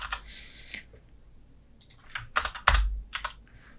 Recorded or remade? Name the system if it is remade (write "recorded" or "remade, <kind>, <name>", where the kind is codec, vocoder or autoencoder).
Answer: recorded